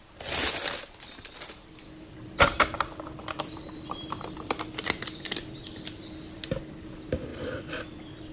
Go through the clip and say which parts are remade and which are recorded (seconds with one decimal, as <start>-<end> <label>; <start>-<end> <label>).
0.0-1.6 remade; 1.6-2.6 recorded; 2.6-8.3 remade

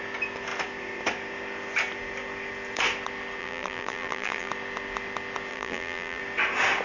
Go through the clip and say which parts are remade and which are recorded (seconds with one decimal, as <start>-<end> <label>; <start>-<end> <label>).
0.0-3.4 recorded; 3.4-4.5 remade; 4.5-5.5 recorded; 5.5-6.2 remade; 6.2-6.8 recorded

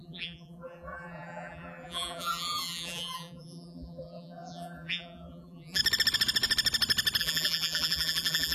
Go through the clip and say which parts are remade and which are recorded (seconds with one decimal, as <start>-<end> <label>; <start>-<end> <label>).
0.0-5.8 remade; 5.8-7.2 recorded; 7.2-8.5 remade